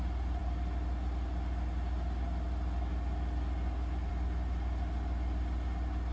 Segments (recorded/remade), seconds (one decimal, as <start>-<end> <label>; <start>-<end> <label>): 0.0-6.1 recorded